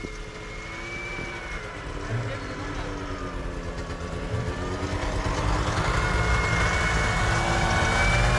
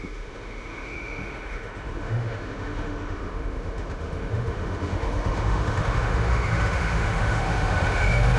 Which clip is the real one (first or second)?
first